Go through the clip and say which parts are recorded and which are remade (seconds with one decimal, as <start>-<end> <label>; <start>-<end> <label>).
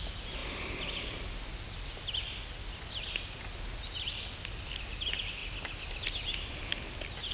0.0-7.3 recorded